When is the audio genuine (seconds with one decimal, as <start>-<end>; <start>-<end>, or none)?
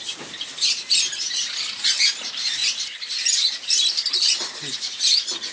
0.0-5.5